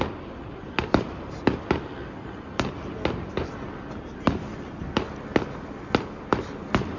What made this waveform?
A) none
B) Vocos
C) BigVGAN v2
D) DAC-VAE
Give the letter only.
A